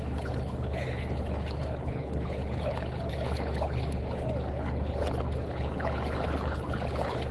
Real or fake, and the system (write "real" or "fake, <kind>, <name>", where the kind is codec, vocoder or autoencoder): fake, codec, HILCodec